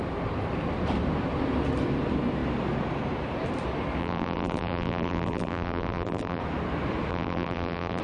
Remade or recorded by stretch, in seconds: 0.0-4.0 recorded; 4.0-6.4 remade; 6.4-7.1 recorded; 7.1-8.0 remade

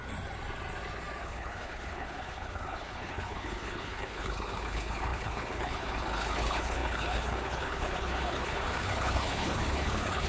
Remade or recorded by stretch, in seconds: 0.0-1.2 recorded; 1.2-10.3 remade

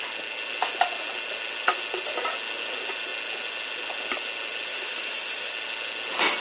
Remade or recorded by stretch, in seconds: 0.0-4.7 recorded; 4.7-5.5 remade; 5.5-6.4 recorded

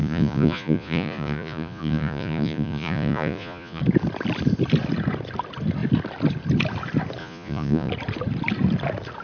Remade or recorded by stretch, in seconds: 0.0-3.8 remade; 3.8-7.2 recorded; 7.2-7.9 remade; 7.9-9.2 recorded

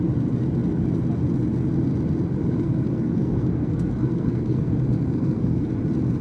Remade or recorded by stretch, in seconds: 0.0-2.4 recorded; 2.4-5.7 remade; 5.7-6.2 recorded